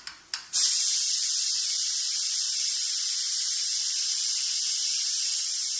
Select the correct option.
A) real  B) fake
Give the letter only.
A